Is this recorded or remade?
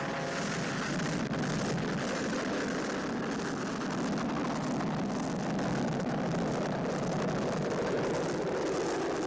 recorded